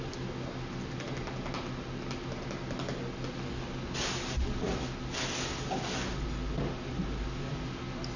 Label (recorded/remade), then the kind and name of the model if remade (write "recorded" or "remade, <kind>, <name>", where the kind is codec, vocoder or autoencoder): recorded